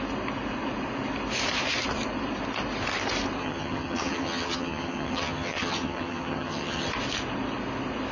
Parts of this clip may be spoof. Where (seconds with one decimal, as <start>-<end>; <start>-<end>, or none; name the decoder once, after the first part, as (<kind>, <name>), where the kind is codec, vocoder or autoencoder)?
3.4-6.9 (vocoder, HiFi-GAN)